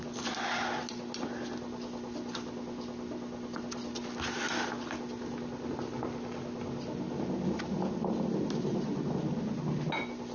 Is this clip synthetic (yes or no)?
no